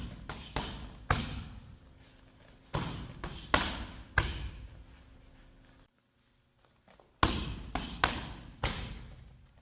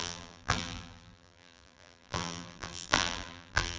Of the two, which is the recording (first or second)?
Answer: first